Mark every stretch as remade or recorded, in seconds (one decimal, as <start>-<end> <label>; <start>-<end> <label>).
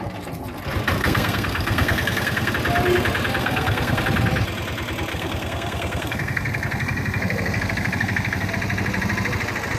0.0-1.0 recorded; 1.0-2.5 remade; 2.5-3.4 recorded; 3.4-4.0 remade; 4.0-5.1 recorded; 5.1-8.5 remade; 8.5-9.8 recorded